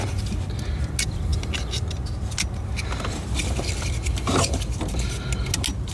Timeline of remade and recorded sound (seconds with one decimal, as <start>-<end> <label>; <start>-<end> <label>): 0.0-5.9 recorded